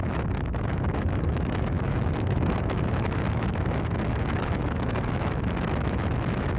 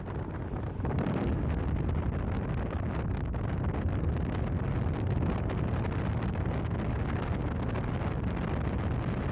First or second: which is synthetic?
first